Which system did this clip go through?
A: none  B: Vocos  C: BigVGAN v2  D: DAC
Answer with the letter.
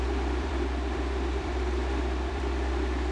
C